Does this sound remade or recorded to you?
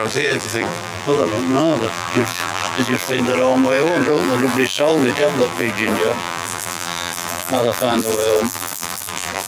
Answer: remade